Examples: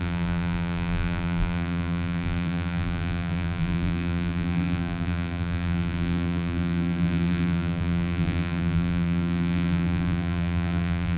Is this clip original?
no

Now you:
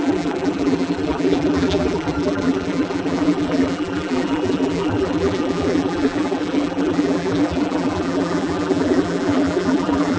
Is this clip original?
no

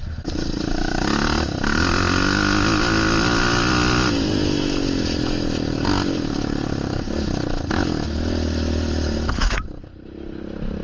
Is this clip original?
yes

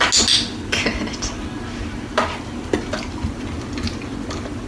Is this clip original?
yes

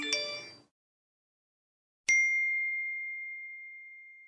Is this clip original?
yes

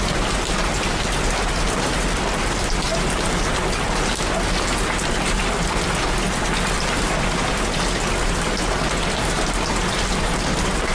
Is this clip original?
yes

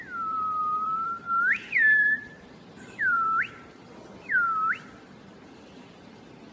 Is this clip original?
no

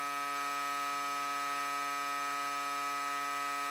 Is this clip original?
yes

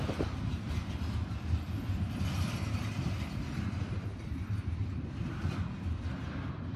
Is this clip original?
yes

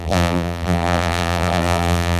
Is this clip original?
no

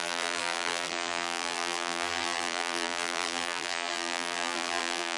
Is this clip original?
no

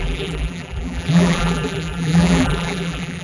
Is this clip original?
no